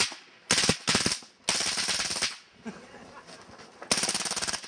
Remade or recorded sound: recorded